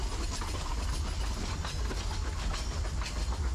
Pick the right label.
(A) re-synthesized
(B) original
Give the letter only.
B